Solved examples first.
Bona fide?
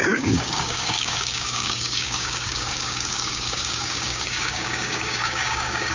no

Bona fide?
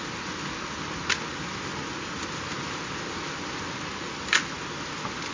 yes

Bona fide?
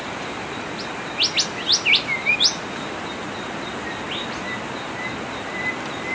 yes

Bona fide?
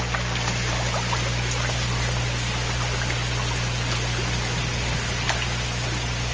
yes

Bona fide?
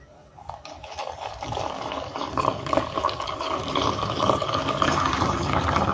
no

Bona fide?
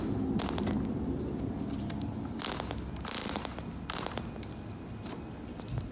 yes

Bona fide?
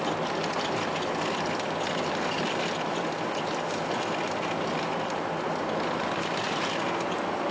yes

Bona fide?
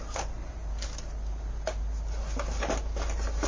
yes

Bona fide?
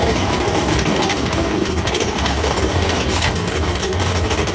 no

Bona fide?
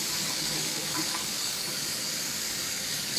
no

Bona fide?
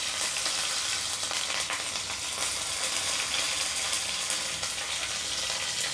yes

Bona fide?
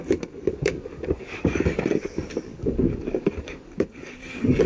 no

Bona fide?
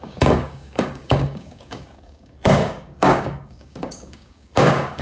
no